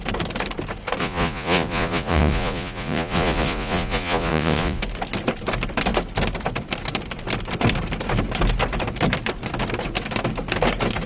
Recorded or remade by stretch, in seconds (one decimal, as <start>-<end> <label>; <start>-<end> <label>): 0.0-1.0 recorded; 1.0-4.8 remade; 4.8-11.1 recorded